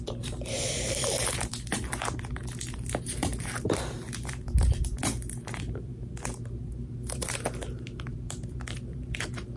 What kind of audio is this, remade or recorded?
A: remade